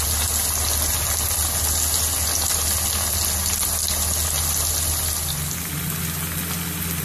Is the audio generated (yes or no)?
no